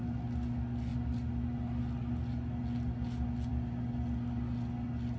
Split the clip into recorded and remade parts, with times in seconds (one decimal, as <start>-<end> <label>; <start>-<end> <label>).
0.0-5.2 recorded